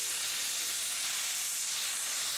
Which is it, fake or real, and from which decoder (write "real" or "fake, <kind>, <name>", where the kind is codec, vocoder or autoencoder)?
real